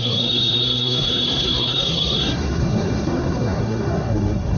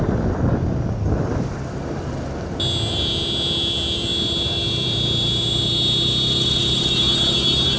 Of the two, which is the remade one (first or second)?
first